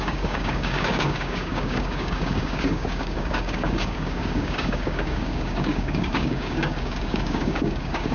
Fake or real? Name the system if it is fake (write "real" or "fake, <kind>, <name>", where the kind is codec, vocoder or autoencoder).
fake, codec, DAC